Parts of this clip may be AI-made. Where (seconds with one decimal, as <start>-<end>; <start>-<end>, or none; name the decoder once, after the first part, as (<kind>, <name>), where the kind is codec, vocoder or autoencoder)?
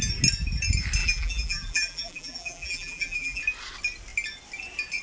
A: 1.0-3.4 (vocoder, BigVGAN v2)